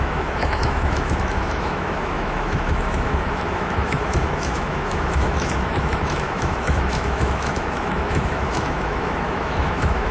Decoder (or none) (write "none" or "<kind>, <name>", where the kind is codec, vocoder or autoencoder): autoencoder, DAC-VAE